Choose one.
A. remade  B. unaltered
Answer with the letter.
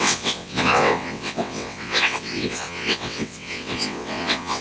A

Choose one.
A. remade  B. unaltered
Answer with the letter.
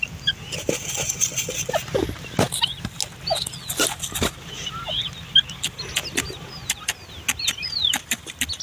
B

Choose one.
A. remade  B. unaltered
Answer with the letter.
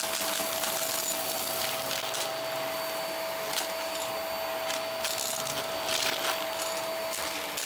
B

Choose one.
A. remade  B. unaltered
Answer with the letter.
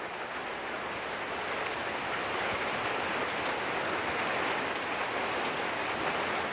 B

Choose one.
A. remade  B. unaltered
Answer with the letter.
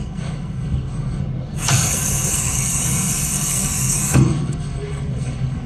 A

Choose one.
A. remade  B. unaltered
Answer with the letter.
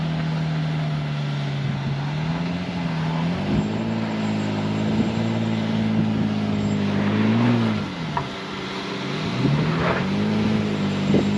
B